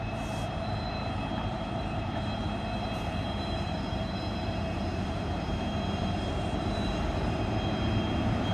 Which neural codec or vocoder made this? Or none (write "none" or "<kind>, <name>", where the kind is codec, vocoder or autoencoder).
vocoder, BigVGAN v2